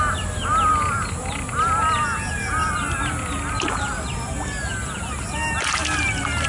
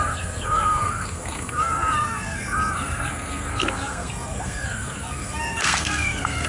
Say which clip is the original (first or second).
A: first